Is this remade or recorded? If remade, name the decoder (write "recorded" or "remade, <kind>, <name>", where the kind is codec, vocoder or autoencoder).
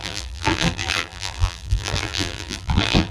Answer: remade, vocoder, BigVGAN v2